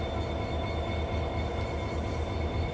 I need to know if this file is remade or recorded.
recorded